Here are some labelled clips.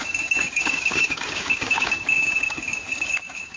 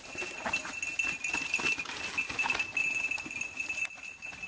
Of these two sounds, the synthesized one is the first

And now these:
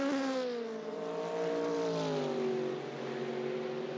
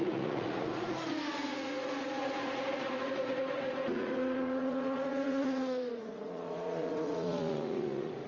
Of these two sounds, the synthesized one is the second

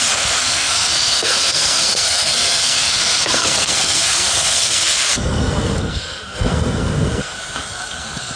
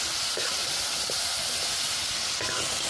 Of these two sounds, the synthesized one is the first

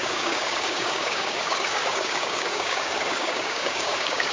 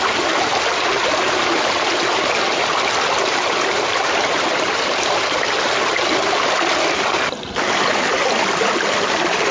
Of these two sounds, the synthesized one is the first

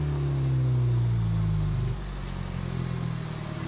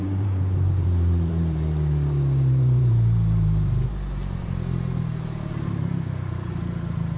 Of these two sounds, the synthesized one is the second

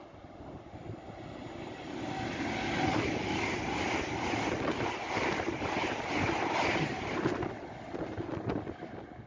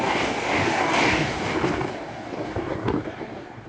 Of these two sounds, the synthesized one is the second